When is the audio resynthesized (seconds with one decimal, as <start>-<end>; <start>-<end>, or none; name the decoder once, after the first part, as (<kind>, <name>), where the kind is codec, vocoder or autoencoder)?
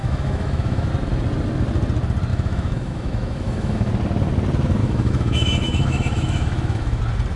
0.0-0.9 (autoencoder, DAC-VAE); 2.3-3.9; 4.8-7.0